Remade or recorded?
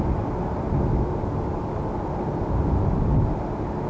recorded